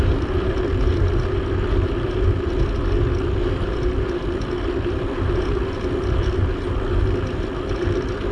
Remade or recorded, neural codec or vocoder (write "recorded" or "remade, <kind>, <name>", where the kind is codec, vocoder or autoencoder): recorded